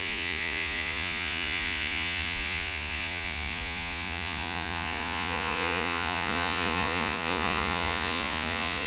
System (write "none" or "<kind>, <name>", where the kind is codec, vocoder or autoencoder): vocoder, Vocos